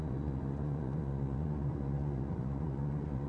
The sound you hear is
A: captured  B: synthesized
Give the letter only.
B